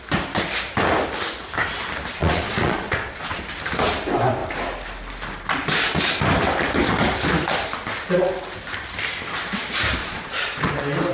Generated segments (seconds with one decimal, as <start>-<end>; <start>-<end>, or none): 2.2-3.4; 10.0-10.7